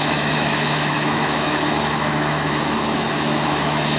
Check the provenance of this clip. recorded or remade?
remade